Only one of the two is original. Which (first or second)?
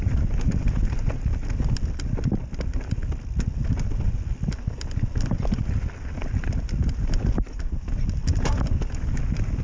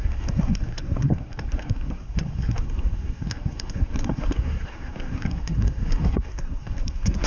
first